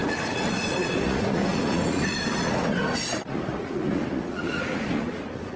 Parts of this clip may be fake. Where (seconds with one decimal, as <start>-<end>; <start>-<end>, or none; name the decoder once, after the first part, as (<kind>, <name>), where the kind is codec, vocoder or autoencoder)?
0.0-5.6 (vocoder, Vocos)